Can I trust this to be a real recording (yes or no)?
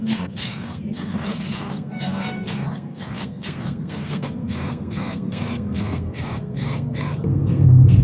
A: no